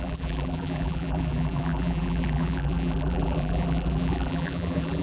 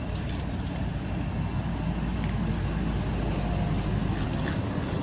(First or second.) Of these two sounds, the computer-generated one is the first